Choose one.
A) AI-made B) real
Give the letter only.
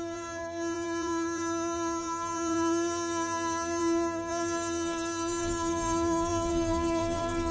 A